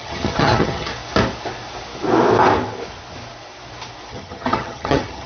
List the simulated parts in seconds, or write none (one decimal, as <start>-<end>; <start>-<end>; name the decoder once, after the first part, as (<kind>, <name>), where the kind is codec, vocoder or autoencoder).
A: 0.0-0.9 (vocoder, HiFi-GAN); 4.1-5.3